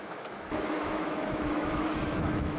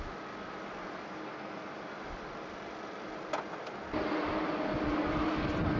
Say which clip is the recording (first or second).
second